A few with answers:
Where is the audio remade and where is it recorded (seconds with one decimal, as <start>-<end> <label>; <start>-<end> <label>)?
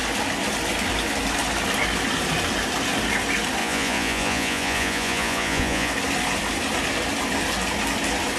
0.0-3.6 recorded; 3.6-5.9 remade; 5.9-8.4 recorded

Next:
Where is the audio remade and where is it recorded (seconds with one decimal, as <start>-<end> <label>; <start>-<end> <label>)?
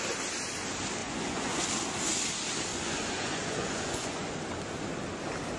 0.0-1.0 recorded; 1.0-1.6 remade; 1.6-2.7 recorded; 2.7-4.3 remade; 4.3-5.6 recorded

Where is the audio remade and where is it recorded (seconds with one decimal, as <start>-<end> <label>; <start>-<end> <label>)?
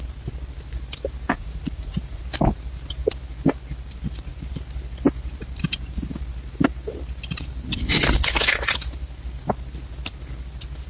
0.0-1.3 recorded; 1.3-2.2 remade; 2.2-10.9 recorded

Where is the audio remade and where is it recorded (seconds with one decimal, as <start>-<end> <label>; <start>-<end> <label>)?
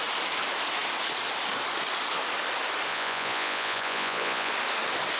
0.0-2.9 recorded; 2.9-4.5 remade; 4.5-5.2 recorded